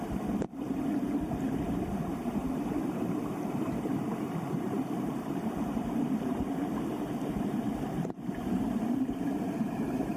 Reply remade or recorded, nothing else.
remade